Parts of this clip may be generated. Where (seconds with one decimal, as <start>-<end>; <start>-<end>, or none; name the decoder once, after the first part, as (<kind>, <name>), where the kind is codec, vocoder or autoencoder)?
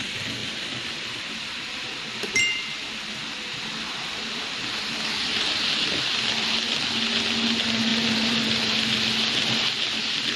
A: 0.4-2.8 (vocoder, BigVGAN v2); 3.5-6.3; 7.9-8.6